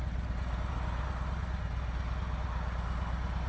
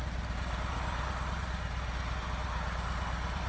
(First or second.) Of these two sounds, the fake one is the second